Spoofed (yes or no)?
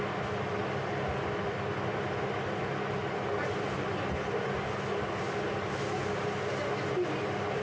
no